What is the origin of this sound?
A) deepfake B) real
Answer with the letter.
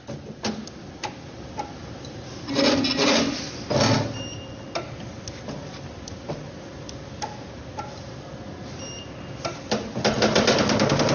B